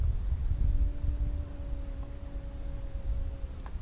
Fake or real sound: real